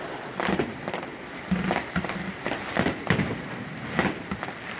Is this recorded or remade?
recorded